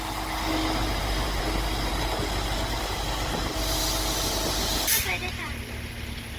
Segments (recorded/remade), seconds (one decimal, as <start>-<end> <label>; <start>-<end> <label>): 0.0-0.8 recorded; 0.8-1.4 remade; 1.4-6.4 recorded